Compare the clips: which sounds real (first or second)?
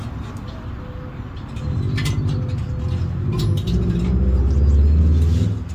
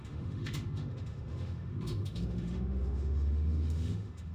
first